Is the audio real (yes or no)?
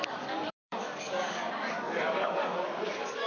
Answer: no